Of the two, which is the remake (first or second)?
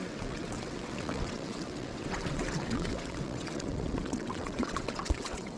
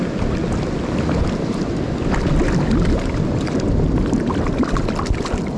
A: first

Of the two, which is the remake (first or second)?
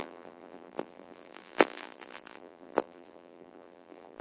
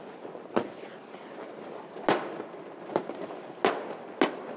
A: first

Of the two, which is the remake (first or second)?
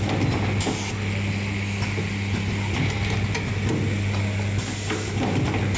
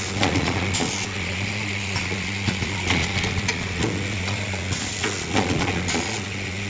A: second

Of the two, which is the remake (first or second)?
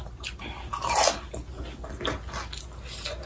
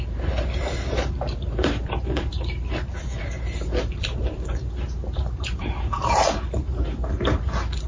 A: second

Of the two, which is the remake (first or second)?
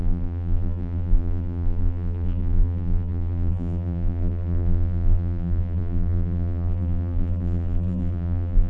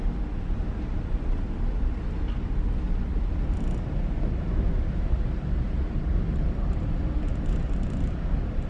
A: first